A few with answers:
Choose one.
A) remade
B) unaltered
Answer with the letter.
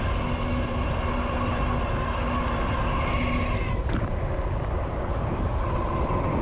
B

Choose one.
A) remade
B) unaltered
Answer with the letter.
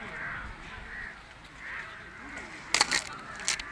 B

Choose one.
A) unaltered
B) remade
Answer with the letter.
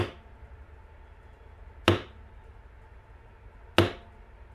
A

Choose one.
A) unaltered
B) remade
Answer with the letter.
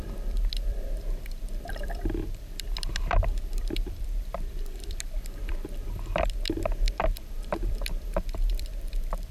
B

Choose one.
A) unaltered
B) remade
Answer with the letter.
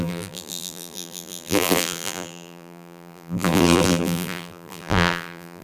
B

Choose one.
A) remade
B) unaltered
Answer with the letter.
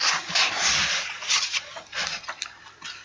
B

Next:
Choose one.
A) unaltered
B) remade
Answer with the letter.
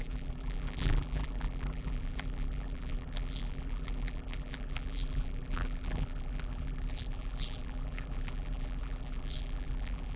B